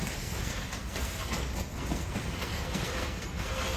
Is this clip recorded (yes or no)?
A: no